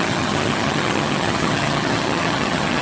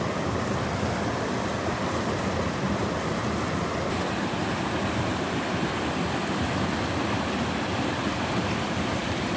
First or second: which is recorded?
second